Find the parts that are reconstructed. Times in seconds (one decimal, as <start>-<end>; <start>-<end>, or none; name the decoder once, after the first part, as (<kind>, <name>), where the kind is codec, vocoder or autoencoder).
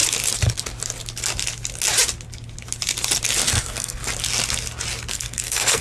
3.5-4.0 (codec, SNAC); 5.1-5.8